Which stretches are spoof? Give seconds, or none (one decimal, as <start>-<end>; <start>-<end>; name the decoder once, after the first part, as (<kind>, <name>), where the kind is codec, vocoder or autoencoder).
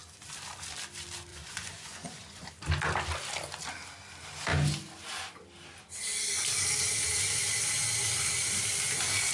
1.3-2.5 (vocoder, Vocos)